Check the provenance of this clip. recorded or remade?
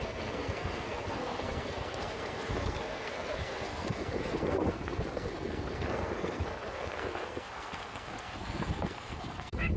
remade